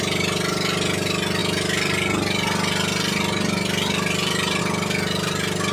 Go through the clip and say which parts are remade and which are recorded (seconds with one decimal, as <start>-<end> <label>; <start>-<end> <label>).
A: 0.0-5.7 recorded